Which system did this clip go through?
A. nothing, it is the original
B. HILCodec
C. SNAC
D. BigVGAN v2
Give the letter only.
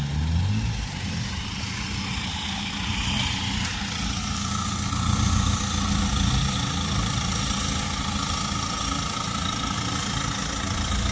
A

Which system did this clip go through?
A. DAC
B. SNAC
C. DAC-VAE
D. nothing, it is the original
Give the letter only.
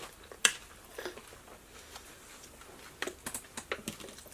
D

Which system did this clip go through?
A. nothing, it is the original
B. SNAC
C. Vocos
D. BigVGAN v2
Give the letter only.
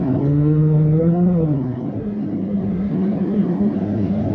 B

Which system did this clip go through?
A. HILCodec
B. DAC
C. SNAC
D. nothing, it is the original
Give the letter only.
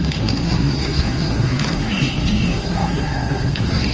C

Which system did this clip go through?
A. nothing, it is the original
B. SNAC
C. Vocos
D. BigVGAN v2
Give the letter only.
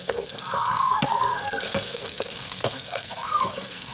B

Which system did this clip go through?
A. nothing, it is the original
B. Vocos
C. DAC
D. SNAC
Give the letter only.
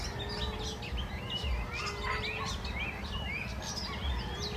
A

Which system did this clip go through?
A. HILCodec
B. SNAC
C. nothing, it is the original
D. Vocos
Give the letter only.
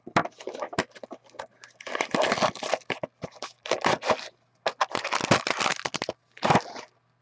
C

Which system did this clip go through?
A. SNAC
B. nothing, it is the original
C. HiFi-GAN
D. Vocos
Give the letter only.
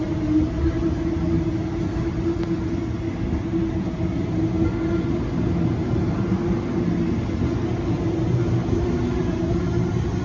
B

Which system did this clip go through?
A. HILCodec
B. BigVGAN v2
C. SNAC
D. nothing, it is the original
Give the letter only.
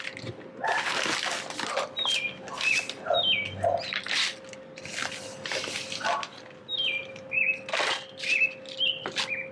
D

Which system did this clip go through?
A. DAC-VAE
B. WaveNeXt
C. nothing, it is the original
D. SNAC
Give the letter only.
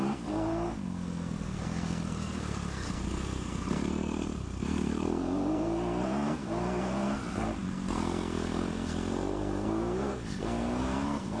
D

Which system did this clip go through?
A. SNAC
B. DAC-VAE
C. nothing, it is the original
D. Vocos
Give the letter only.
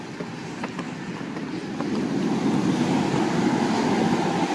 C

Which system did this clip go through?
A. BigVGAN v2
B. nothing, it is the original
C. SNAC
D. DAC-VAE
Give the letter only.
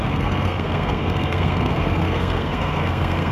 C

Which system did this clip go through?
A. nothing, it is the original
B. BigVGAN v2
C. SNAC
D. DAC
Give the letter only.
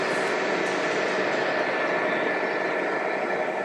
A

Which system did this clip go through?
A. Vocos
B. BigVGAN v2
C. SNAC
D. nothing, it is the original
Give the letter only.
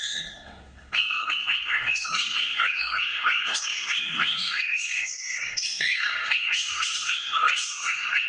C